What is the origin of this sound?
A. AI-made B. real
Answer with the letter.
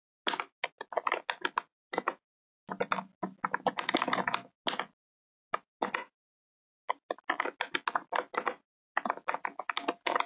B